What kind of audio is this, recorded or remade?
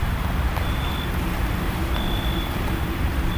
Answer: recorded